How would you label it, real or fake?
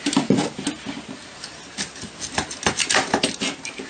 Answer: real